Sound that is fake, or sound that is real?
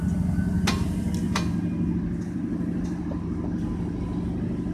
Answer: real